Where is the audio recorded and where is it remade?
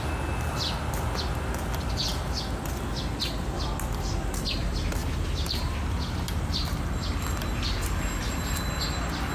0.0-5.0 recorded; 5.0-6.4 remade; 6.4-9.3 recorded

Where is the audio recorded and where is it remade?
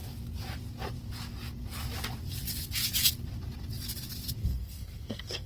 0.0-4.4 recorded; 4.4-5.5 remade